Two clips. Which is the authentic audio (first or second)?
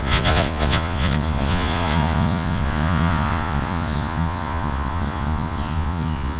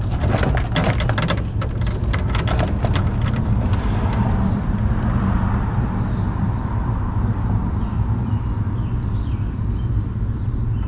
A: second